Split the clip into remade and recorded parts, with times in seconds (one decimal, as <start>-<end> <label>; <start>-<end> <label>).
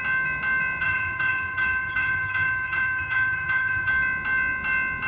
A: 0.0-0.8 recorded; 0.8-3.9 remade; 3.9-5.1 recorded